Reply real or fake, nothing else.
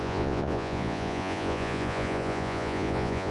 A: fake